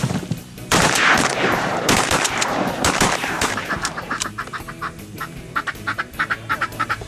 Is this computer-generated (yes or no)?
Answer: yes